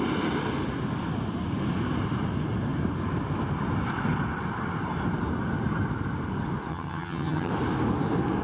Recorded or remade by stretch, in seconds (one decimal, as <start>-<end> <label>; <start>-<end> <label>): 0.0-6.7 recorded; 6.7-7.5 remade; 7.5-8.4 recorded